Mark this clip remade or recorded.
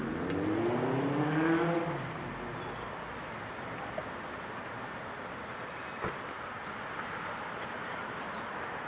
recorded